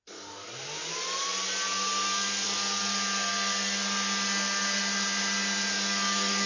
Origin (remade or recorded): recorded